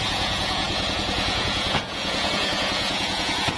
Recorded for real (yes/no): no